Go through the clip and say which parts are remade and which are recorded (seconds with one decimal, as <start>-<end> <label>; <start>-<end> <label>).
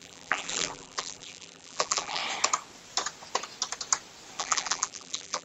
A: 0.0-2.2 remade; 2.2-4.4 recorded; 4.4-5.4 remade